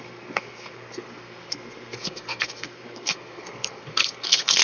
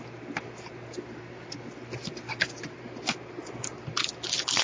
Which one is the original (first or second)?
second